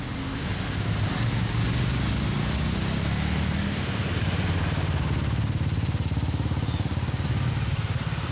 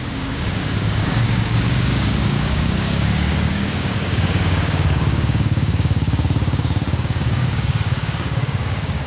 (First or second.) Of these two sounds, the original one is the first